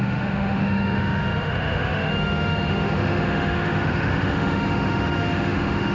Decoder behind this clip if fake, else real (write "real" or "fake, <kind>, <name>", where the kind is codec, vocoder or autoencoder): fake, autoencoder, DAC-VAE